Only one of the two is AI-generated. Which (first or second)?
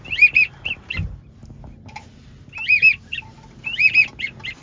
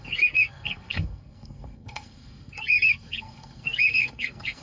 second